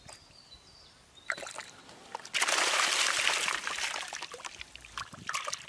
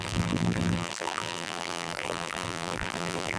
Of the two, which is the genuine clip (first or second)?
first